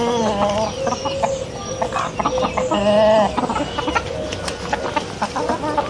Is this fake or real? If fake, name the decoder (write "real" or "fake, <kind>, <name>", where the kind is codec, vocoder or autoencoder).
real